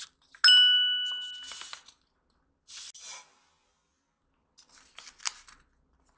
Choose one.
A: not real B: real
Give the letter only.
B